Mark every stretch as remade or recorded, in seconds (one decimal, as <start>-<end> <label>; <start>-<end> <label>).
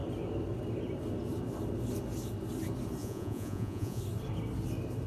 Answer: 0.0-3.0 recorded; 3.0-4.0 remade; 4.0-5.1 recorded